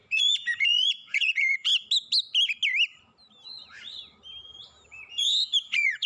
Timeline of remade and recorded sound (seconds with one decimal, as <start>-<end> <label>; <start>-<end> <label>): 0.0-1.7 remade; 1.7-5.1 recorded; 5.1-6.1 remade